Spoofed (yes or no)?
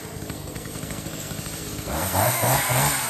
yes